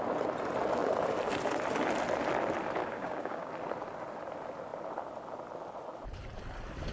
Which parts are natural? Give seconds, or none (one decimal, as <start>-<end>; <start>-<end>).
0.0-2.8; 3.5-6.9